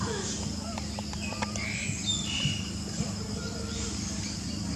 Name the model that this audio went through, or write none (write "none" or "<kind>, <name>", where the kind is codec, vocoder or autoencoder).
vocoder, BigVGAN v2